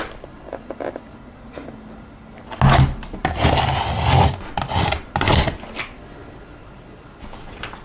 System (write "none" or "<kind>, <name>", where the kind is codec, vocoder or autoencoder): none